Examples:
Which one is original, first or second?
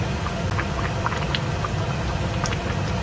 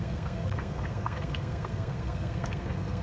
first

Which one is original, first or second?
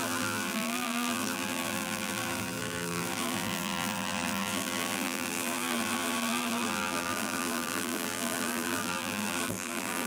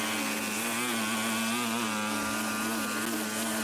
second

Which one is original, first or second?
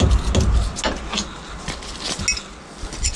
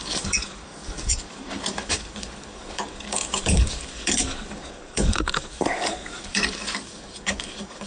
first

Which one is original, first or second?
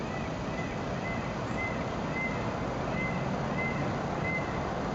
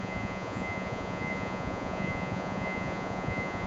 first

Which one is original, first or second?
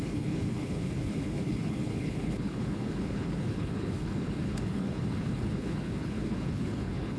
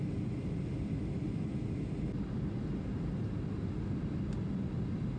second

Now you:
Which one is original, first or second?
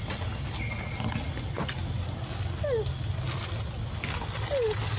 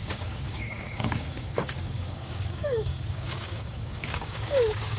first